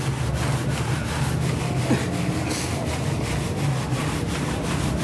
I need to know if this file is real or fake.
real